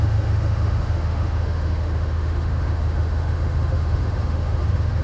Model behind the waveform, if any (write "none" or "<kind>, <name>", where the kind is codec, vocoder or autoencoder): autoencoder, DAC-VAE